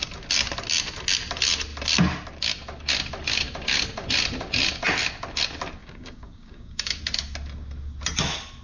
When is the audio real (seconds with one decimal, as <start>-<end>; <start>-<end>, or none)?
0.0-5.8; 7.0-8.6